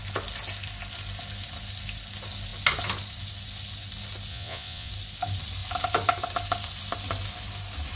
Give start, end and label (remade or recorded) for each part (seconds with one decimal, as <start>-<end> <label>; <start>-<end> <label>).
0.0-4.3 recorded; 4.3-4.9 remade; 4.9-8.0 recorded